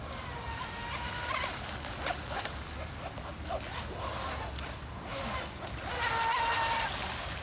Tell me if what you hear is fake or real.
real